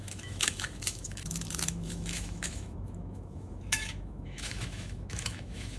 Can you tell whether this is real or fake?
fake